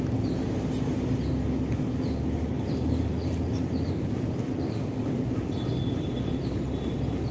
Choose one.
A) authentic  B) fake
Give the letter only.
A